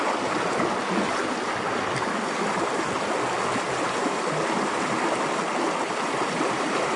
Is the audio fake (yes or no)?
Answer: no